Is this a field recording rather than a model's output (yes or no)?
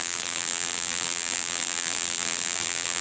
no